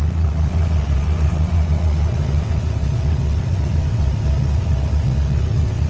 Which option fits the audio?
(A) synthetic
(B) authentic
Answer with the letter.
A